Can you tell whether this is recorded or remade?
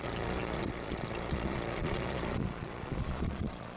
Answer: remade